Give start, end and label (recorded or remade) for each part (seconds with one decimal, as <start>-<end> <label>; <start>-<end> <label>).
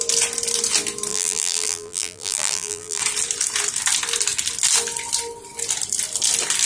0.0-1.1 recorded; 1.1-3.0 remade; 3.0-6.7 recorded